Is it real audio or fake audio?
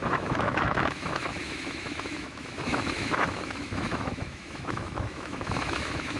fake